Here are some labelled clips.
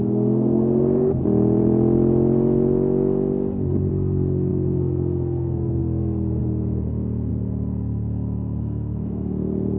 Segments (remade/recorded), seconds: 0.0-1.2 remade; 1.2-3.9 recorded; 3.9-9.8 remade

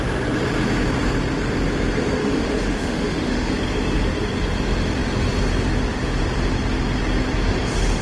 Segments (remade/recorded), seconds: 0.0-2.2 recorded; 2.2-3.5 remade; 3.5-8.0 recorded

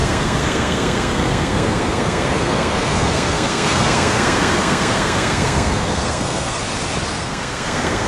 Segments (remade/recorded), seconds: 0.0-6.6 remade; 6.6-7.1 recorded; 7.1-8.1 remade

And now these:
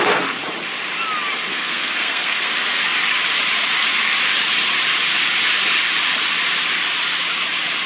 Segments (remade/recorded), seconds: 0.0-1.5 recorded; 1.5-2.5 remade; 2.5-7.9 recorded

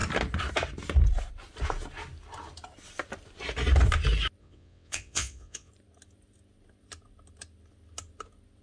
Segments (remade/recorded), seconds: 0.0-4.4 recorded; 4.4-5.7 remade; 5.7-8.6 recorded

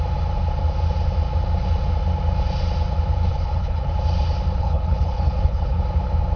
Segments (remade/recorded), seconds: 0.0-3.3 recorded; 3.3-3.9 remade; 3.9-4.6 recorded; 4.6-5.8 remade; 5.8-6.4 recorded

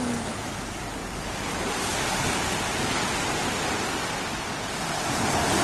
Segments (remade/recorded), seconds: 0.0-5.6 recorded

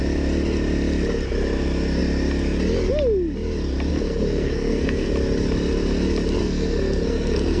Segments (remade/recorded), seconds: 0.0-3.9 recorded; 3.9-5.1 remade; 5.1-6.4 recorded; 6.4-7.6 remade